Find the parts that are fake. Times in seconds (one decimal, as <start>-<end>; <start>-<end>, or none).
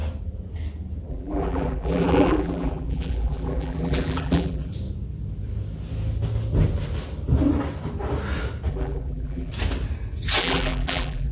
1.1-4.7; 8.7-9.5; 10.4-11.3